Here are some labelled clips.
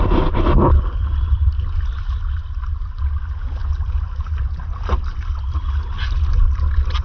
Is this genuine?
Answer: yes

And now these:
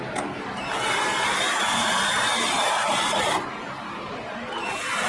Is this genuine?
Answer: yes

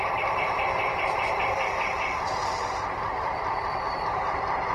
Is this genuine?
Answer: no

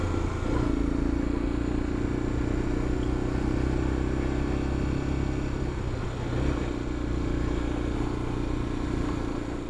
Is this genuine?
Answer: yes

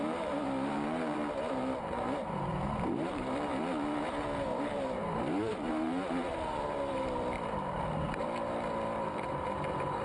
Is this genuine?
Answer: no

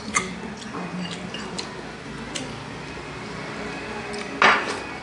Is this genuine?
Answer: yes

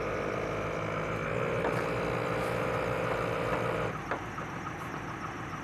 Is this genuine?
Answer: yes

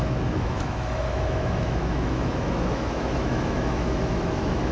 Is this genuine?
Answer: no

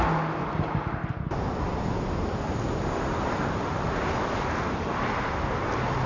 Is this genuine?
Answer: yes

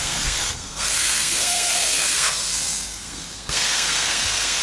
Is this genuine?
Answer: no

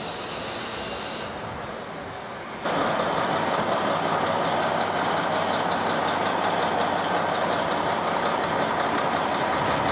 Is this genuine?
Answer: yes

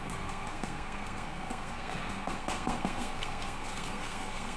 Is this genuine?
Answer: no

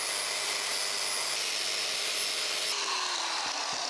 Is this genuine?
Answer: yes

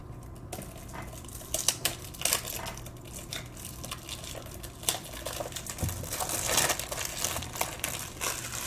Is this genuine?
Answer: yes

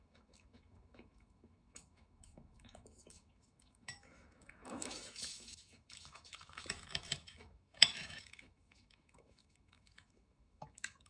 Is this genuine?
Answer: no